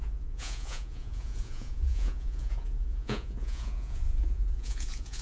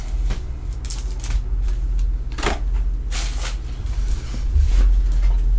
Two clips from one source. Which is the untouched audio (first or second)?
second